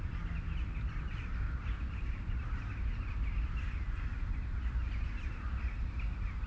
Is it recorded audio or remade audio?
recorded